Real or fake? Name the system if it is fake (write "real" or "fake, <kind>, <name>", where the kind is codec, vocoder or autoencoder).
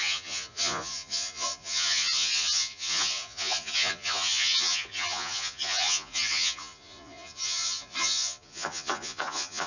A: fake, vocoder, Vocos